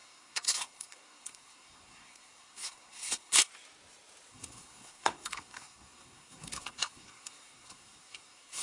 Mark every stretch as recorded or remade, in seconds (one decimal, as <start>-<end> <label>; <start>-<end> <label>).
0.0-3.5 remade; 3.5-4.3 recorded; 4.3-8.6 remade